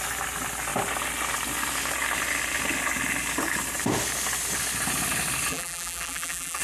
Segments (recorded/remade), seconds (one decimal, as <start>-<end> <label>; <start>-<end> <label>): 0.0-5.5 recorded; 5.5-6.6 remade